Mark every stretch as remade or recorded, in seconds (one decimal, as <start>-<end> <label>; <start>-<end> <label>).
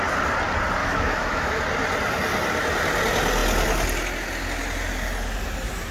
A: 0.0-0.8 recorded; 0.8-1.6 remade; 1.6-5.9 recorded